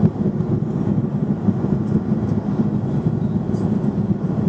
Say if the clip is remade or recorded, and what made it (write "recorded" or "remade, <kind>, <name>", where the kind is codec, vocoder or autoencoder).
recorded